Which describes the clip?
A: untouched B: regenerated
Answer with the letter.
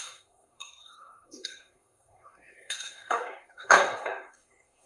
B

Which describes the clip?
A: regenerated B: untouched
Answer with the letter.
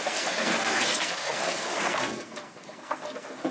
A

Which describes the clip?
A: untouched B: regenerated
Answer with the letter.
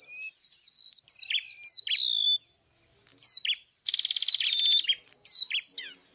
A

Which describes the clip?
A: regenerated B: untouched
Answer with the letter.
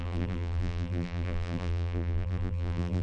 A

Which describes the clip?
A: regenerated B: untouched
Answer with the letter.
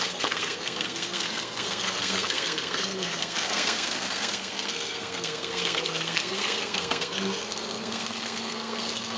A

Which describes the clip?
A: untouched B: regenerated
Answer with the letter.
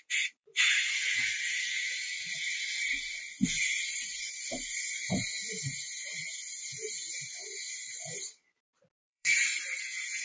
B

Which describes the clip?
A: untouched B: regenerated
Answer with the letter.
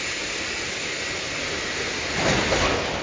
A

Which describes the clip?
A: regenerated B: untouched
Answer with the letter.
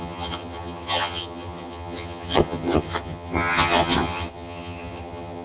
A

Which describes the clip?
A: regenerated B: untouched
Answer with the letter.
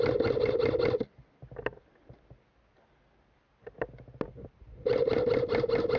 B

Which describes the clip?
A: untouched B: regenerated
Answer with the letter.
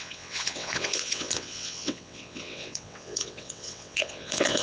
B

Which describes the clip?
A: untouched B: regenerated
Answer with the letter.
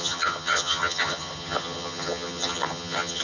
B